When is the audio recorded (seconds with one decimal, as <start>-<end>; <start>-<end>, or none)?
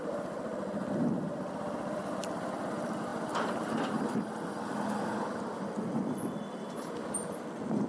0.0-7.9